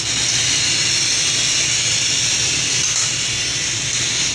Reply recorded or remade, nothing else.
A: recorded